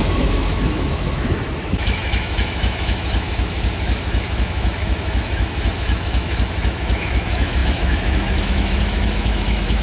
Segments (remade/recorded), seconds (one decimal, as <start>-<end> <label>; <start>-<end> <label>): 0.0-9.8 remade